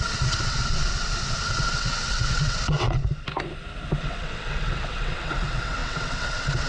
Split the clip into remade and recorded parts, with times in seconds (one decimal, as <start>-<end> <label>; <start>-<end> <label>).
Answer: 0.0-0.6 remade; 0.6-1.5 recorded; 1.5-3.0 remade; 3.0-4.0 recorded; 4.0-6.7 remade